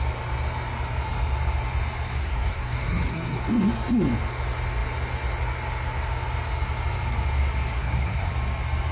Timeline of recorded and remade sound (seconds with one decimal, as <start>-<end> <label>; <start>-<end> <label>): 0.0-2.2 recorded; 2.2-3.4 remade; 3.4-7.7 recorded; 7.7-8.3 remade; 8.3-8.9 recorded